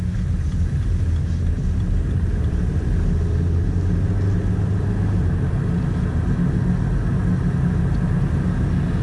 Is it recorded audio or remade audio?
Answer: recorded